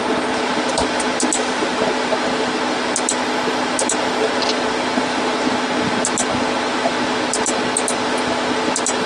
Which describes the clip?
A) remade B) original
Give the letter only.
B